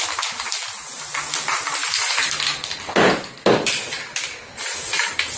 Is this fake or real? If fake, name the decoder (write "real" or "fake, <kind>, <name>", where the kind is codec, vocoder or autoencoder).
real